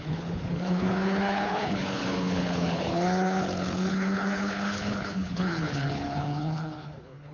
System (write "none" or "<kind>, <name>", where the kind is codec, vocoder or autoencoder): codec, HILCodec